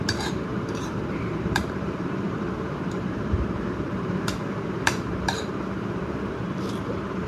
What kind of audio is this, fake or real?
fake